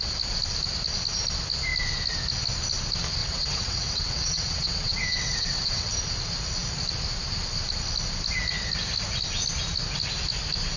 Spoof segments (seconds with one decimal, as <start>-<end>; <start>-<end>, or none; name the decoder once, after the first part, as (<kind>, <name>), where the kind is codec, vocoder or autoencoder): 3.2-5.9 (vocoder, WaveNeXt)

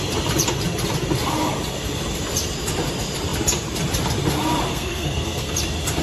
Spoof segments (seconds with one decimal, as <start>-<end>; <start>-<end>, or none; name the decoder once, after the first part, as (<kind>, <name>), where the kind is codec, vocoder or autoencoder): 4.7-5.5 (codec, SNAC)

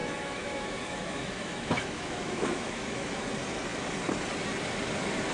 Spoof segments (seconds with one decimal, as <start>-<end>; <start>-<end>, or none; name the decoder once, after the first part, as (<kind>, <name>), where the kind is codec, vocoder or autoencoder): 0.0-3.2 (autoencoder, DAC-VAE)

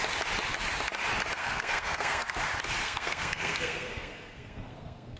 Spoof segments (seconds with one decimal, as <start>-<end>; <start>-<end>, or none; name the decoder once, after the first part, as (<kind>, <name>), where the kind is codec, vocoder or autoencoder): 1.4-2.4 (codec, SNAC); 2.8-5.2

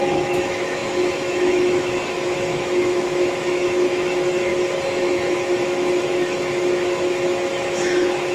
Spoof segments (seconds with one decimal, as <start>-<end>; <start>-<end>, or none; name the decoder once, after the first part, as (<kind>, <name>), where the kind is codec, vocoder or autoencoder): 0.0-4.5 (autoencoder, DAC-VAE); 5.0-8.3

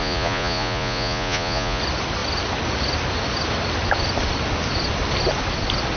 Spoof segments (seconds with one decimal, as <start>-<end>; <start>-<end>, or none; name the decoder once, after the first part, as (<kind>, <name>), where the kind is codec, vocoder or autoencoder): 0.0-1.8 (vocoder, Vocos)

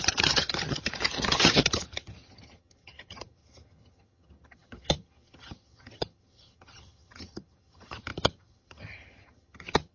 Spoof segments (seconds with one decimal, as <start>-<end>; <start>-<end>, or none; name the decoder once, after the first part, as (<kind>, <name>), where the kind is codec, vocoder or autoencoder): 0.0-9.9 (vocoder, HiFi-GAN)

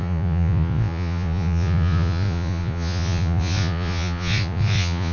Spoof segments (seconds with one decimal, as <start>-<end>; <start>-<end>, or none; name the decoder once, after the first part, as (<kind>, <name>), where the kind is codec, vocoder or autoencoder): 0.0-5.1 (vocoder, Vocos)